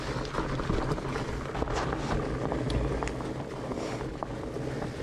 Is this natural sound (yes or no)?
yes